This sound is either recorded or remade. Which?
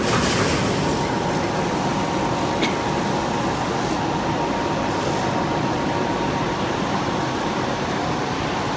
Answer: recorded